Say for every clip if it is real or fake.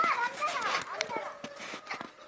real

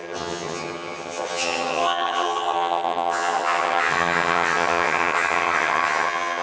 fake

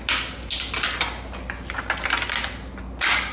real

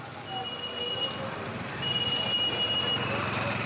real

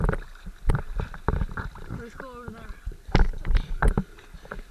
real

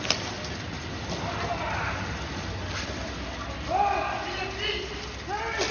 real